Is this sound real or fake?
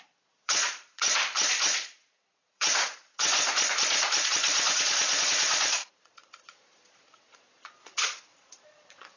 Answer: fake